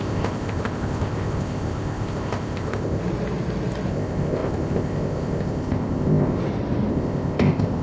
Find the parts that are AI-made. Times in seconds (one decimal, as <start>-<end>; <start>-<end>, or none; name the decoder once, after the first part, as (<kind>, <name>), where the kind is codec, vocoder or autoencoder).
0.0-3.0 (codec, ZipCodec); 3.9-6.4; 6.9-7.8